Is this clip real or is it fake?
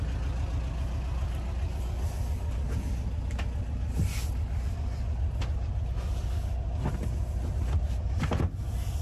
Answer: real